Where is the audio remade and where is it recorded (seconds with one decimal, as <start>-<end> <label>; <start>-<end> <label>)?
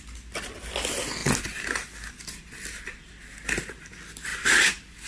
0.0-5.1 recorded